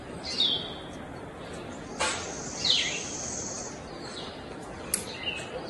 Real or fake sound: real